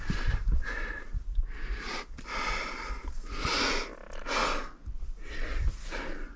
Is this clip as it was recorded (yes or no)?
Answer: yes